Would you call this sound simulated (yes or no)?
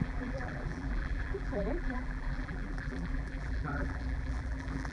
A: yes